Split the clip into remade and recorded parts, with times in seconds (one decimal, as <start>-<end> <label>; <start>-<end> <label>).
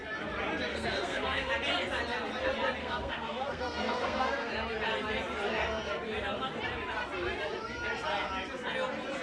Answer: 0.0-0.7 recorded; 0.7-1.5 remade; 1.5-2.8 recorded; 2.8-4.5 remade; 4.5-9.2 recorded